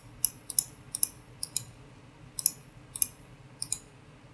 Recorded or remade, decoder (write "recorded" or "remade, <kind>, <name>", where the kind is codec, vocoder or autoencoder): recorded